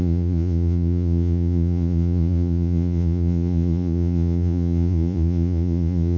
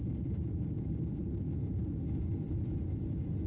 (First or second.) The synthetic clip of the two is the first